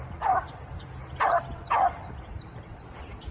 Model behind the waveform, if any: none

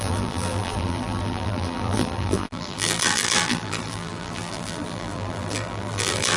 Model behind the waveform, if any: vocoder, BigVGAN v2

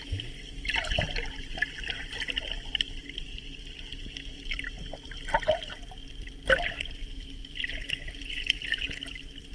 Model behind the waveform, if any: none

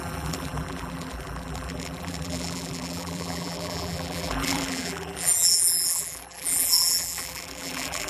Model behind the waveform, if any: vocoder, BigVGAN v2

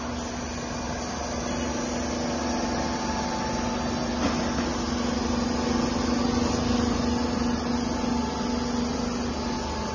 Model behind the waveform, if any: none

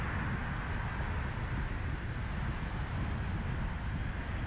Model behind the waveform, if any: none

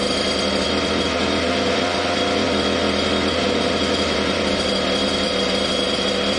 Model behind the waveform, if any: vocoder, BigVGAN v2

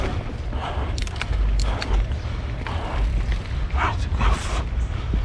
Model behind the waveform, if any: vocoder, BigVGAN v2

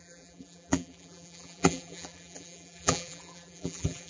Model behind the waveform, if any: vocoder, BigVGAN v2